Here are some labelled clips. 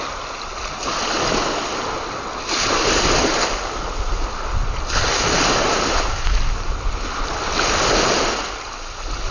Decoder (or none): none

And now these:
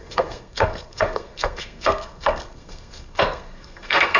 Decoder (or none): codec, SNAC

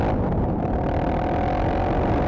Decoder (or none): none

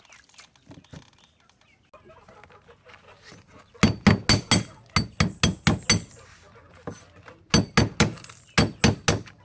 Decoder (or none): none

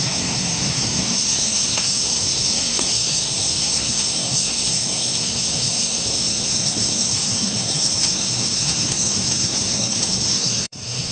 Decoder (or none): codec, SNAC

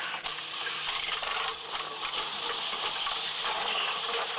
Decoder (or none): none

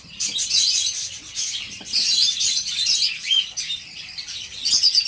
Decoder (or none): none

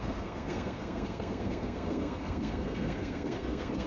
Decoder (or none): codec, SNAC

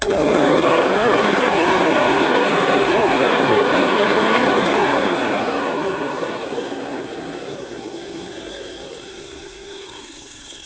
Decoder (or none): codec, SNAC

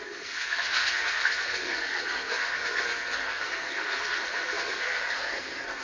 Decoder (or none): codec, SNAC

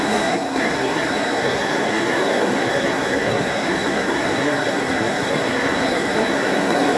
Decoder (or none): codec, SNAC